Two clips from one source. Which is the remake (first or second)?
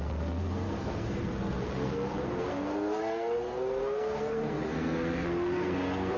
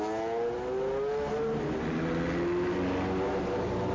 first